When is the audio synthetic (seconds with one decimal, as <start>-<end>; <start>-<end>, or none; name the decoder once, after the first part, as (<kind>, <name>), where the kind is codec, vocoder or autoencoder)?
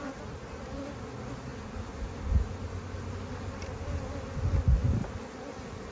none